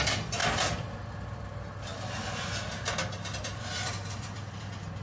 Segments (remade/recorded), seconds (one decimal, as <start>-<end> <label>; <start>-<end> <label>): 0.0-0.4 remade; 0.4-3.4 recorded; 3.4-5.0 remade